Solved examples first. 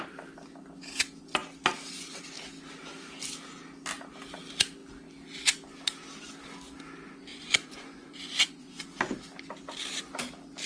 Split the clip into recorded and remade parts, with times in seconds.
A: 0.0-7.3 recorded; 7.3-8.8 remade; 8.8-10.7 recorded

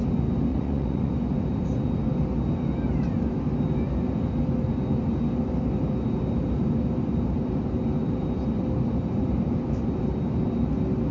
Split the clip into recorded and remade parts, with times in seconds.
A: 0.0-0.5 recorded; 0.5-1.1 remade; 1.1-11.1 recorded

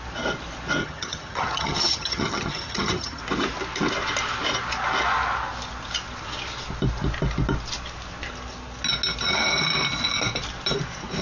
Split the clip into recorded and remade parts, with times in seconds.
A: 0.0-0.8 recorded; 0.8-3.2 remade; 3.2-11.2 recorded

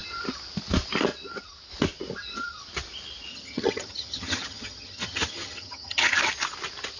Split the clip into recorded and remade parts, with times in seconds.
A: 0.0-3.3 recorded; 3.3-6.3 remade; 6.3-7.0 recorded

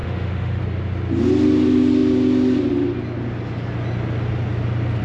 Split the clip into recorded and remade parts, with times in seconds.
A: 0.0-0.6 remade; 0.6-5.0 recorded

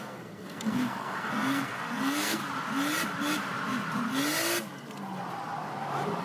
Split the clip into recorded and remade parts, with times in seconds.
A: 0.0-2.4 remade; 2.4-6.2 recorded

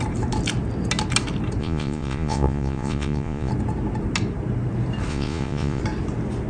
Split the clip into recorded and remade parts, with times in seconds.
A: 0.0-1.6 recorded; 1.6-3.5 remade; 3.5-5.1 recorded; 5.1-5.8 remade; 5.8-6.5 recorded